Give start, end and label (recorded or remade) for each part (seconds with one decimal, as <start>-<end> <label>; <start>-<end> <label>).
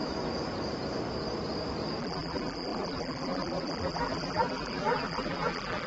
0.0-2.0 recorded; 2.0-5.9 remade